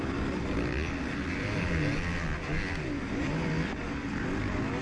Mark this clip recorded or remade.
recorded